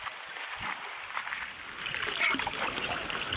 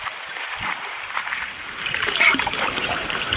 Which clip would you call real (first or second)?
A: first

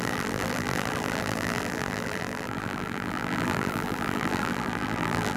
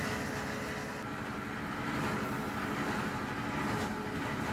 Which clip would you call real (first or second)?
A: second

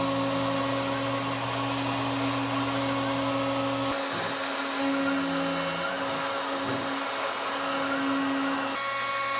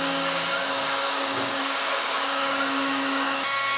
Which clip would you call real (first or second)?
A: first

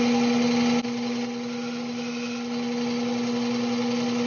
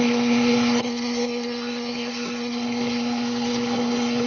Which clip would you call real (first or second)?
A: first